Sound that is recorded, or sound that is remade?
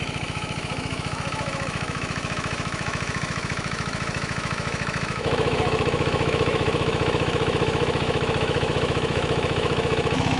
remade